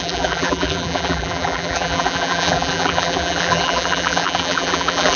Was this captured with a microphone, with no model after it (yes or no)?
no